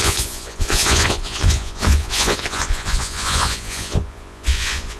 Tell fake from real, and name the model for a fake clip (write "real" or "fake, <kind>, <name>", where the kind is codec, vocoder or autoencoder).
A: fake, vocoder, Vocos